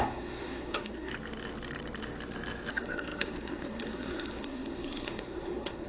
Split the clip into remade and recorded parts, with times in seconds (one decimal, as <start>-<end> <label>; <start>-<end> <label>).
0.0-1.1 remade; 1.1-2.7 recorded; 2.7-5.9 remade